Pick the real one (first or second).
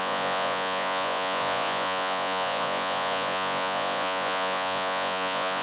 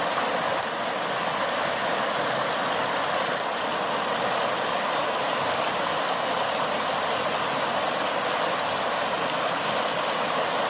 second